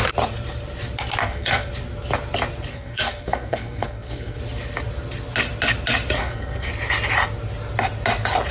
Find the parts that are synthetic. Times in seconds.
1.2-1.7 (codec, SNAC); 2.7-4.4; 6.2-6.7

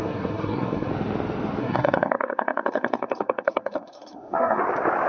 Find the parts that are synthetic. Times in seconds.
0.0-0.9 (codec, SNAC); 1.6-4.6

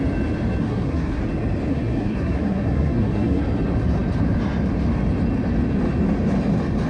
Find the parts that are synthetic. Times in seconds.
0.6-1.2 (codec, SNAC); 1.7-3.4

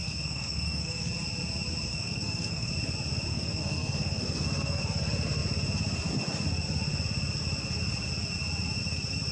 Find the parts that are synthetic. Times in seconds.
0.0-1.1 (codec, SNAC); 1.9-2.7; 3.3-4.8

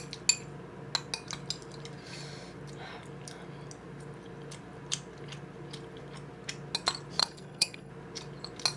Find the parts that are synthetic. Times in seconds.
7.2-7.9 (codec, SNAC)

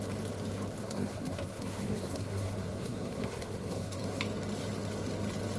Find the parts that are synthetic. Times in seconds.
0.8-4.2 (codec, SNAC)